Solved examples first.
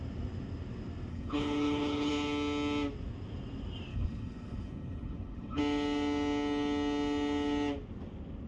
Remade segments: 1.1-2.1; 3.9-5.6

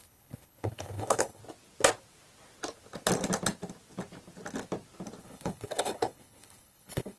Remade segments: 0.0-1.4; 5.2-7.2

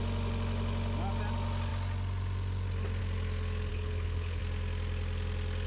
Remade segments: 3.7-4.4

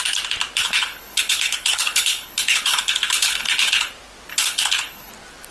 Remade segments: 0.6-3.9; 4.3-5.1